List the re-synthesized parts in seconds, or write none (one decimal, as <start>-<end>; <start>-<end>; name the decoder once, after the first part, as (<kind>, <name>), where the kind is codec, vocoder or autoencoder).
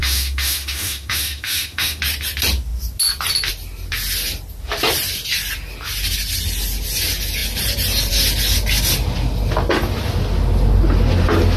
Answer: 0.0-2.0 (autoencoder, DAC-VAE)